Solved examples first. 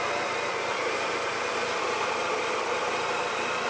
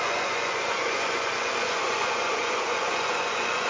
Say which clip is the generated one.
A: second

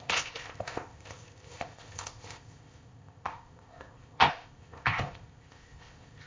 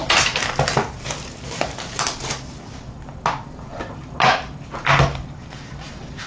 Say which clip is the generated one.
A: first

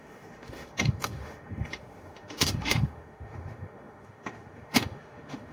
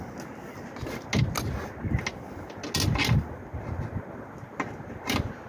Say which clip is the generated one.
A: first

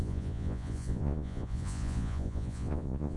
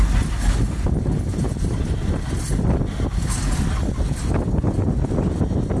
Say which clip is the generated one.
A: first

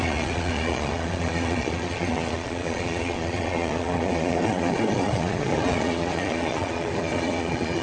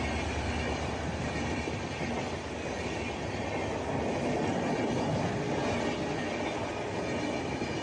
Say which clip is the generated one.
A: first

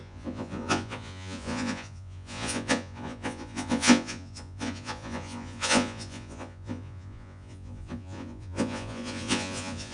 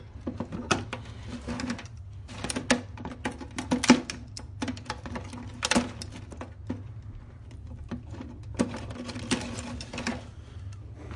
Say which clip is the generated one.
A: first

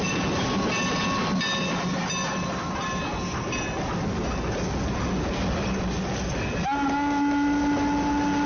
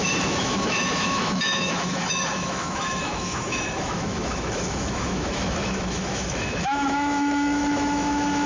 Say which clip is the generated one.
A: second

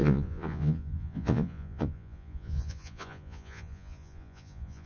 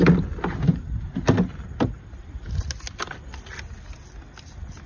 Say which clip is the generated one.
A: first